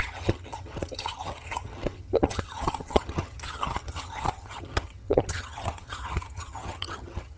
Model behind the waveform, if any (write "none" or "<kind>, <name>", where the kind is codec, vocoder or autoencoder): vocoder, HiFi-GAN